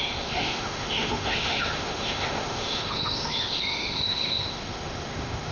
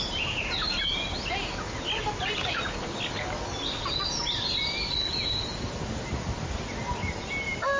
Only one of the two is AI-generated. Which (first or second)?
first